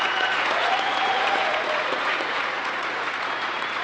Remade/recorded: remade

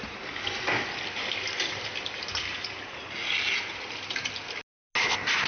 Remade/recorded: recorded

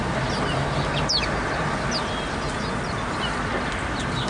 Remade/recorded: recorded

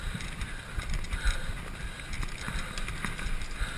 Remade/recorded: recorded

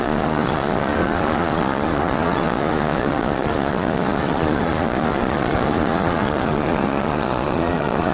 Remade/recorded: remade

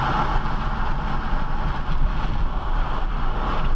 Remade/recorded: recorded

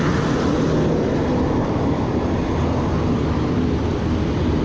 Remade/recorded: recorded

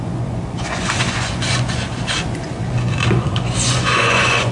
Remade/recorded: remade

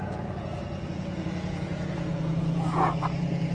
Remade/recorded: remade